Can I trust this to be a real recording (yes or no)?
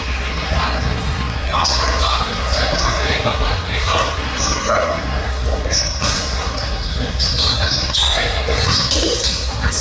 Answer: no